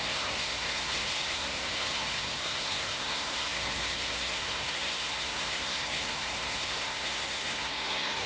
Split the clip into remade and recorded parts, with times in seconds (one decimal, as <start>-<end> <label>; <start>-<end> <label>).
0.0-8.3 remade